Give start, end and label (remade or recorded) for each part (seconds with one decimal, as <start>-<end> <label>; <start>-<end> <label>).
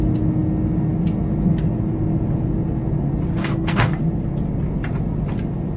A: 0.0-3.4 recorded; 3.4-4.0 remade; 4.0-5.8 recorded